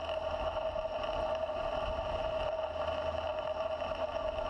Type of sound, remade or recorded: recorded